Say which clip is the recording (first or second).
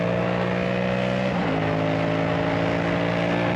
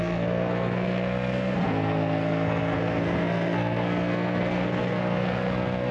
first